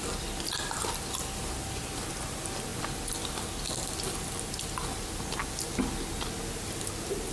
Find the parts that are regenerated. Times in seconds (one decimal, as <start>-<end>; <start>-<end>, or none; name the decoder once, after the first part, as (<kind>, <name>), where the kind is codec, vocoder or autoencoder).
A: none